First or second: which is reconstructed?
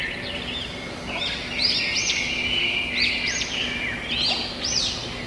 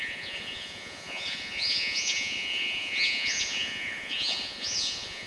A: second